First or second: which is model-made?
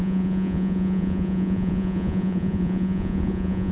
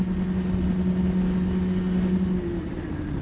first